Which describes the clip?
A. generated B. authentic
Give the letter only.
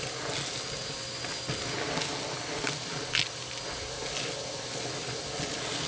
B